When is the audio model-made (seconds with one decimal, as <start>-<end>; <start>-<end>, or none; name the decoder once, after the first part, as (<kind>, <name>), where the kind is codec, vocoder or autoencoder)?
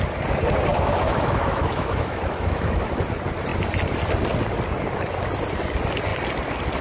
0.7-2.9 (autoencoder, DAC-VAE)